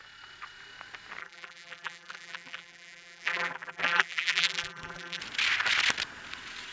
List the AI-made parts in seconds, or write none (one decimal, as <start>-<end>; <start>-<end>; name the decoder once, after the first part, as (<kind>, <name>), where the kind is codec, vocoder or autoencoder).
1.2-5.2 (vocoder, BigVGAN v2)